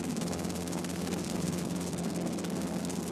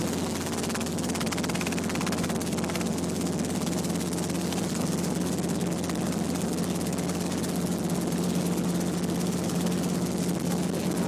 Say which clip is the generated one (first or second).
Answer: first